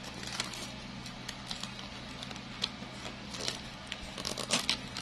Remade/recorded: recorded